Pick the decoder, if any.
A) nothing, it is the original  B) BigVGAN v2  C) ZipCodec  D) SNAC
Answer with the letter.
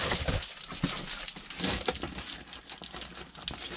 A